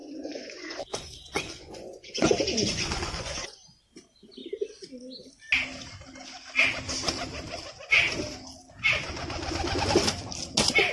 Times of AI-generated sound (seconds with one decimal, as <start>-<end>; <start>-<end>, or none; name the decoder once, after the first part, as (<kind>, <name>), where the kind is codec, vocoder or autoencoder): 0.0-3.8 (vocoder, Vocos)